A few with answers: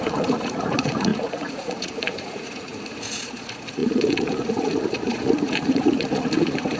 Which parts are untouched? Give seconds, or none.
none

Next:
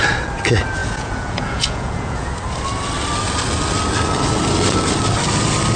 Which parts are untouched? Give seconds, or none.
0.0-0.8; 2.3-5.8

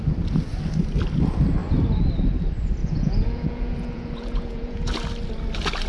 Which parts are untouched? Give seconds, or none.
0.0-2.8; 4.9-5.9

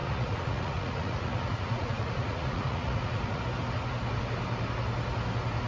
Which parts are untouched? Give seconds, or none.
3.4-5.7

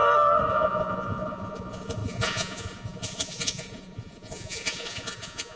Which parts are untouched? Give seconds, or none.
0.0-0.5

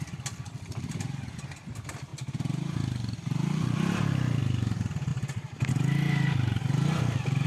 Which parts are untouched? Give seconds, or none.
0.0-7.5

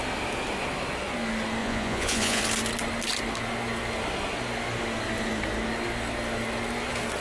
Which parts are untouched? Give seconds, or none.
0.0-1.6; 2.4-7.2